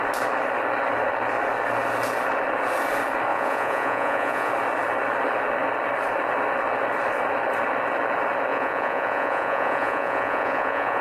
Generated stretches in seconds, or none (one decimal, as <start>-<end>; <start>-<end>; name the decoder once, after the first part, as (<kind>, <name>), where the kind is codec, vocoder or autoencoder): 3.3-4.5 (vocoder, Vocos); 8.5-11.0